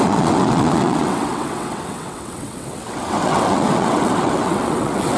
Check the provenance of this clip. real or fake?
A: fake